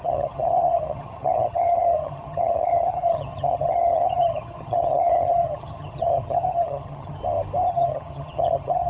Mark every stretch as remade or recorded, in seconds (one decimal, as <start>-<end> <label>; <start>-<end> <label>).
0.0-7.2 remade; 7.2-7.7 recorded; 7.7-8.9 remade